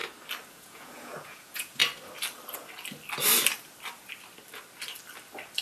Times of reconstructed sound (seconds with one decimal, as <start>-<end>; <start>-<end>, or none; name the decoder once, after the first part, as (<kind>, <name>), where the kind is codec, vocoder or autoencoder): 0.5-1.8 (vocoder, Vocos)